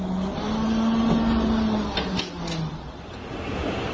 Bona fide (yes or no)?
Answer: yes